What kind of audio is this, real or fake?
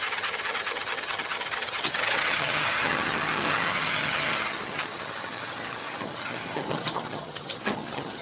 fake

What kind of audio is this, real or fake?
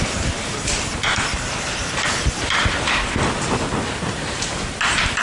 real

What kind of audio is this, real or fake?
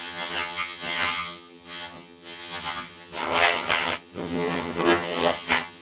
fake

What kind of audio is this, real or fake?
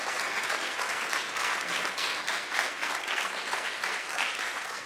fake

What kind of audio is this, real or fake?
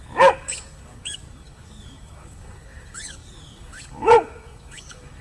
fake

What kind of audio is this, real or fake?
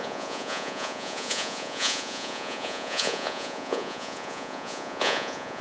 fake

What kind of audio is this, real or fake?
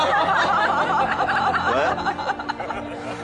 real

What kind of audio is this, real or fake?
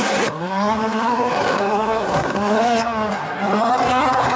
fake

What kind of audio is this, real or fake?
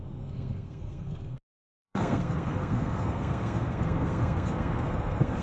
fake